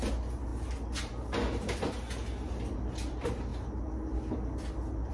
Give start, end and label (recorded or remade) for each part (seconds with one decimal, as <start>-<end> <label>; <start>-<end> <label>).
0.0-5.1 recorded